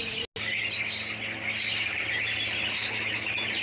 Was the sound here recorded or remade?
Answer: recorded